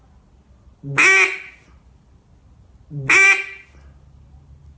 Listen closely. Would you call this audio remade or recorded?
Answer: recorded